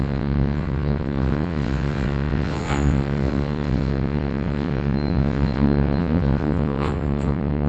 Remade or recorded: remade